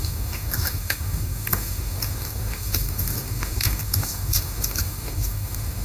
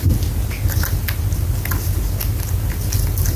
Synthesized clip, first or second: first